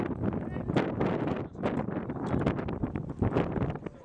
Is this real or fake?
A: real